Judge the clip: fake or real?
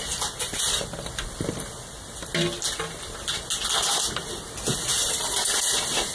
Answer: real